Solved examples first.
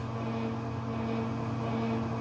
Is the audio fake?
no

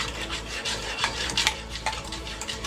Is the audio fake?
yes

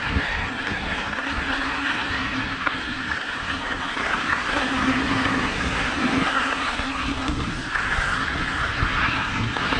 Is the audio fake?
yes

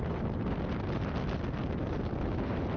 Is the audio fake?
no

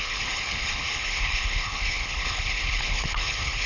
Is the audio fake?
yes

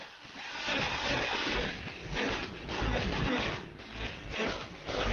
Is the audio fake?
no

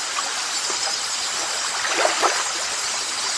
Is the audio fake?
no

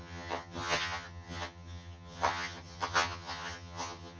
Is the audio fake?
yes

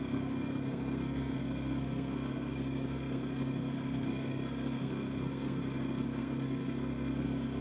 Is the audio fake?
yes